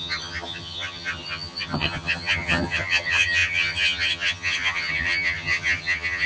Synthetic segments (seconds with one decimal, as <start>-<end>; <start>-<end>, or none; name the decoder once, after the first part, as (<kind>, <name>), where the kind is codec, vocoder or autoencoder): 0.0-6.3 (vocoder, HiFi-GAN)